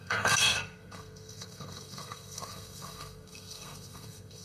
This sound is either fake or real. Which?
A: fake